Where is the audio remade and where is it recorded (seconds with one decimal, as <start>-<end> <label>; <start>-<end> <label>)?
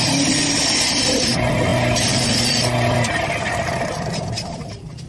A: 0.0-5.1 recorded